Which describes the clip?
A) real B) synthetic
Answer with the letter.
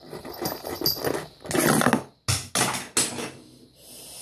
A